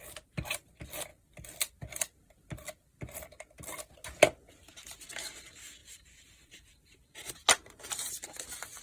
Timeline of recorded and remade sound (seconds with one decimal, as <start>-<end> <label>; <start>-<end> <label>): 0.0-5.8 recorded; 5.8-8.1 remade; 8.1-8.8 recorded